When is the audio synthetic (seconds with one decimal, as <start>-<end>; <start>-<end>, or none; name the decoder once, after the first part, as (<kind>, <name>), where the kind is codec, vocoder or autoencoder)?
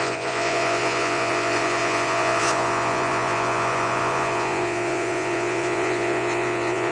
0.0-6.9 (vocoder, Vocos)